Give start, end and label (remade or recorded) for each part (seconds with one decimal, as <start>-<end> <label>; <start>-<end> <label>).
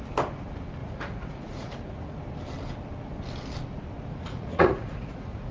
0.0-0.8 recorded; 0.8-2.2 remade; 2.2-4.1 recorded; 4.1-5.5 remade